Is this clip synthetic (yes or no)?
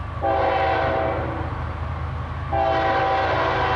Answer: no